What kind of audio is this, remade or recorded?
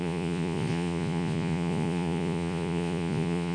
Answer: remade